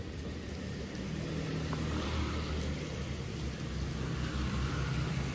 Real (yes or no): yes